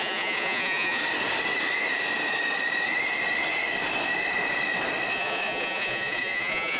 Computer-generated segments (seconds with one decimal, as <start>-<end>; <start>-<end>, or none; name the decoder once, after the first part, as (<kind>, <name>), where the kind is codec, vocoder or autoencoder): 0.0-1.0 (vocoder, Vocos); 5.1-6.8